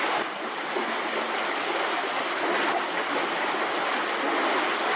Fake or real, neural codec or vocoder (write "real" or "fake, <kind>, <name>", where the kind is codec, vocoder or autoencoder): real